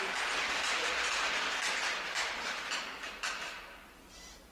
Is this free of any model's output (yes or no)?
no